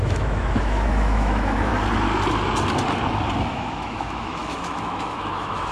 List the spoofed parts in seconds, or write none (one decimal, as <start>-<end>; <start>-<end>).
0.0-1.7; 3.4-5.7